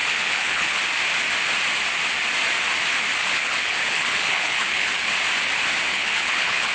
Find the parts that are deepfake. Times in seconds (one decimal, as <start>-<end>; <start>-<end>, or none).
0.0-0.8; 3.2-4.9; 5.9-6.7